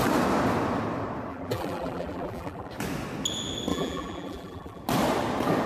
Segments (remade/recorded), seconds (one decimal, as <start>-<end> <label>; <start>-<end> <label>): 0.0-1.3 recorded; 1.3-2.7 remade; 2.7-3.7 recorded; 3.7-4.8 remade; 4.8-5.7 recorded